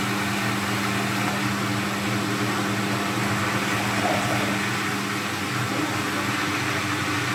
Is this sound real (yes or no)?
yes